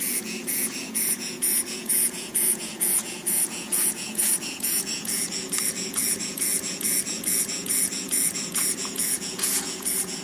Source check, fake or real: fake